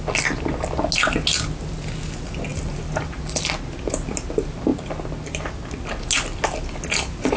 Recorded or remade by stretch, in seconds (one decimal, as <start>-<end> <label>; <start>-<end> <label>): 0.0-7.4 recorded